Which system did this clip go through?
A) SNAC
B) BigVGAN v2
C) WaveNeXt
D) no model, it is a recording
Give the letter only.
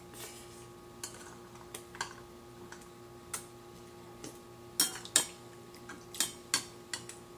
D